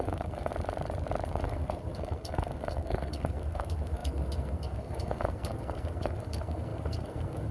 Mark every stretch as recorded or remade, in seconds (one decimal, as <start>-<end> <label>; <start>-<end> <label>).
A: 0.0-0.5 remade; 0.5-1.3 recorded; 1.3-7.5 remade